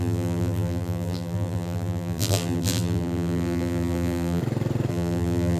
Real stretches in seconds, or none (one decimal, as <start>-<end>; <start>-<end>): 4.4-4.9